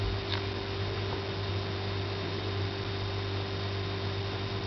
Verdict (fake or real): real